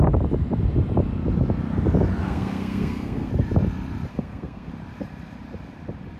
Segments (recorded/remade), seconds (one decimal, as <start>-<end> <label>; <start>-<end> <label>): 0.0-2.2 recorded; 2.2-3.3 remade; 3.3-4.1 recorded; 4.1-4.7 remade; 4.7-6.2 recorded